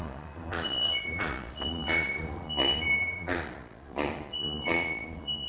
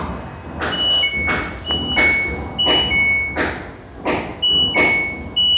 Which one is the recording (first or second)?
second